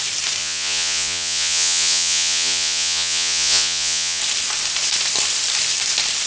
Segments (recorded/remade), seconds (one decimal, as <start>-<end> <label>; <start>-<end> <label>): 0.0-0.4 recorded; 0.4-4.2 remade; 4.2-6.3 recorded